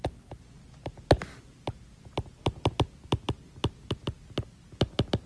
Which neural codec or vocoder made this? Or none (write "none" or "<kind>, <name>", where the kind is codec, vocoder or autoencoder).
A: none